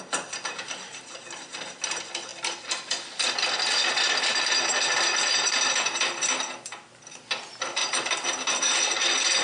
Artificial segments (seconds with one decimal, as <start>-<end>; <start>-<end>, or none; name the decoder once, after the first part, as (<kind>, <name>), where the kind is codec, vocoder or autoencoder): 2.3-5.7 (vocoder, BigVGAN v2)